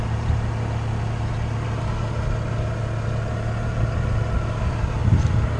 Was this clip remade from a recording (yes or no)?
no